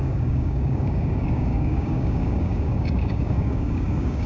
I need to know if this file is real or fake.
fake